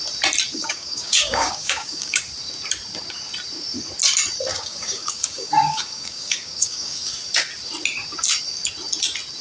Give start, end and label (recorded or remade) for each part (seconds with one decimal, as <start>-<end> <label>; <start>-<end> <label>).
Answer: 0.0-0.5 recorded; 0.5-2.2 remade; 2.2-4.5 recorded; 4.5-7.1 remade; 7.1-9.4 recorded